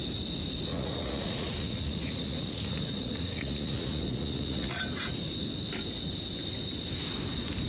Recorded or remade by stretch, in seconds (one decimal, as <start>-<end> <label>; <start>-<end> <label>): 0.0-0.7 recorded; 0.7-4.8 remade; 4.8-7.7 recorded